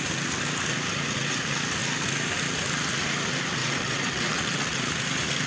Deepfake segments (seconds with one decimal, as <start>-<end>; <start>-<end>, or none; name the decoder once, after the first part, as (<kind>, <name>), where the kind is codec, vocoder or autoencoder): 3.6-4.8 (vocoder, WaveNeXt)